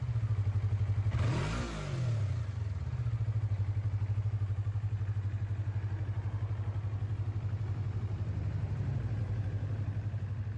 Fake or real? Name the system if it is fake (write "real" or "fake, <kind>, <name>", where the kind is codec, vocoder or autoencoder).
real